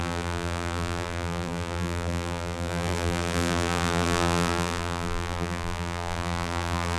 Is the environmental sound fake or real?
fake